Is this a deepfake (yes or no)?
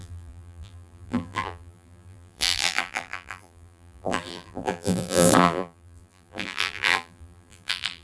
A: yes